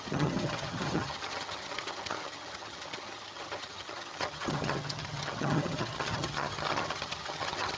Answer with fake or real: fake